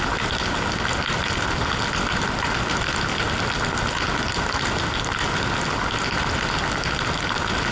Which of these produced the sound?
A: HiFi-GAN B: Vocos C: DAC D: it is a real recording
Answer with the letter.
D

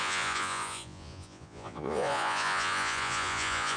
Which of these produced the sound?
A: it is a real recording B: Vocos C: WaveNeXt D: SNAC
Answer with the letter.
B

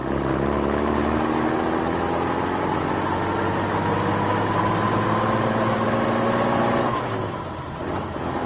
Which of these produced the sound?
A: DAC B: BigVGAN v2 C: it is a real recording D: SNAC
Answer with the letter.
C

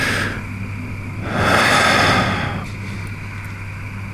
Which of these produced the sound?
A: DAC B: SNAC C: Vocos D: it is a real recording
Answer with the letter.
D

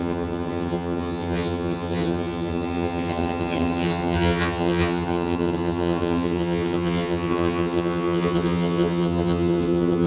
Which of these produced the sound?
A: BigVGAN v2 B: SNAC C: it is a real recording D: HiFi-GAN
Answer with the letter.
D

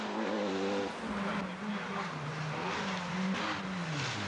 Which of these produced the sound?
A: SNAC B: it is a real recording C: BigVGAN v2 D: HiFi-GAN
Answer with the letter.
B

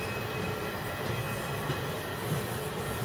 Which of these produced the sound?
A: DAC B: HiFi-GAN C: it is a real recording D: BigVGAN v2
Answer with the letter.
C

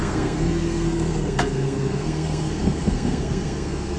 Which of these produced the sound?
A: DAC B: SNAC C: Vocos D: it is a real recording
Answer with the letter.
B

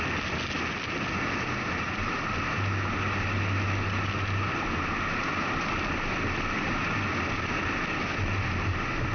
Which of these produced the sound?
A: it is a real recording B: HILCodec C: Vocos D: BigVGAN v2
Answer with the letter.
A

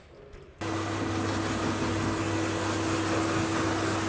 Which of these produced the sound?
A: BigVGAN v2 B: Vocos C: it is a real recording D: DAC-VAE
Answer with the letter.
C